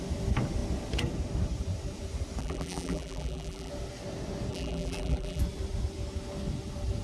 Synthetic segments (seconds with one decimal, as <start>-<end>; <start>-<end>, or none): 2.4-3.7; 4.5-5.4